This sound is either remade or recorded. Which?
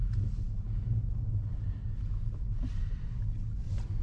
remade